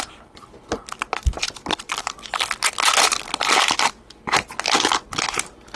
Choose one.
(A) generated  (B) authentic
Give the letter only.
B